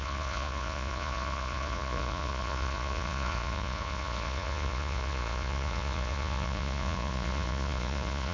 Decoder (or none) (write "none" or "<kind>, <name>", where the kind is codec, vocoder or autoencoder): vocoder, Vocos